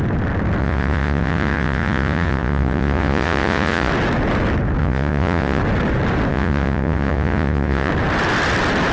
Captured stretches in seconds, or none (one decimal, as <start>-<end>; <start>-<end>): 0.0-0.6; 3.9-4.8; 5.6-6.3; 7.9-8.9

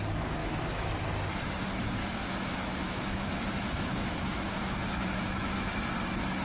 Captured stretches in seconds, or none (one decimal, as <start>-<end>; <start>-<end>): 0.0-0.4; 0.9-2.0; 5.8-6.4

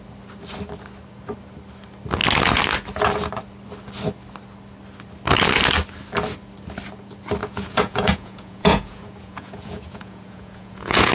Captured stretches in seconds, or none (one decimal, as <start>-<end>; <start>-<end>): 0.0-7.4

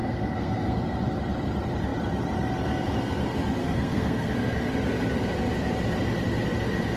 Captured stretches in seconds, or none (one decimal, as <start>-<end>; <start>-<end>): 0.8-3.6; 4.3-7.0

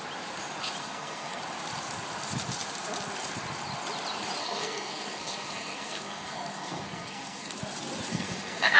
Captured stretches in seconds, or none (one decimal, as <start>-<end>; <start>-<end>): 0.0-0.8; 1.4-4.4; 7.5-8.1

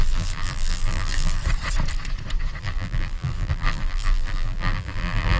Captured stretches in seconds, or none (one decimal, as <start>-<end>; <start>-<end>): 1.4-2.6

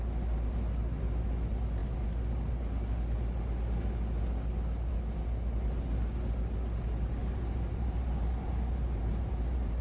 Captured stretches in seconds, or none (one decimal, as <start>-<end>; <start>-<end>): 0.0-7.2

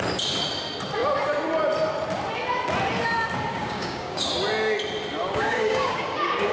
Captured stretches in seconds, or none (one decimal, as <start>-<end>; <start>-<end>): 0.0-3.5; 4.3-5.2